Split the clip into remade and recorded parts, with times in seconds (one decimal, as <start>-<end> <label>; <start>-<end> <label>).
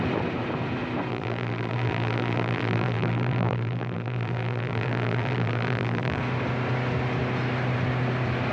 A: 0.0-1.1 recorded; 1.1-6.2 remade; 6.2-8.5 recorded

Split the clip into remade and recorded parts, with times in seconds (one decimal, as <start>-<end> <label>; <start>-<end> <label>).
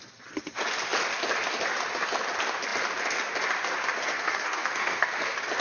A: 0.0-4.1 recorded; 4.1-5.1 remade; 5.1-5.6 recorded